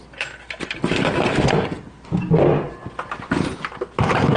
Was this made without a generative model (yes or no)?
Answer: yes